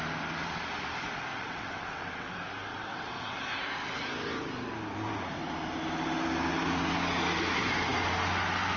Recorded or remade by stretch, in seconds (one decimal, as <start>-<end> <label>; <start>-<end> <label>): 0.0-1.3 recorded; 1.3-2.3 remade; 2.3-2.7 recorded; 2.7-3.4 remade; 3.4-8.8 recorded